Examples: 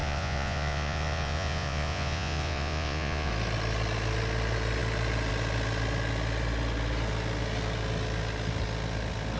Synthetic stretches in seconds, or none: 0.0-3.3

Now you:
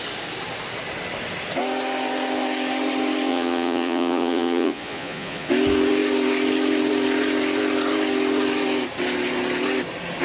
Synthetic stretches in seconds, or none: 3.3-5.5

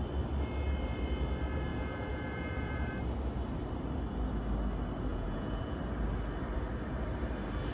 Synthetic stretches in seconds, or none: 1.7-2.9; 5.1-5.8